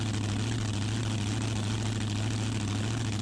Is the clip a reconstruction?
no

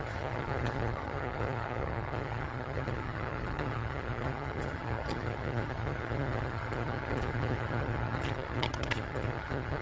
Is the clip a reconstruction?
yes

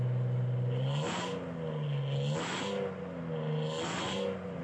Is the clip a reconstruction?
no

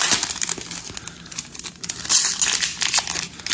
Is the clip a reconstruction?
no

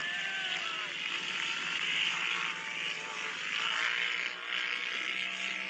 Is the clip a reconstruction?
no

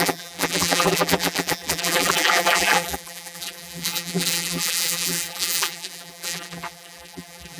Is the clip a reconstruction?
yes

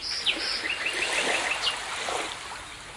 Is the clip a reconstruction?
no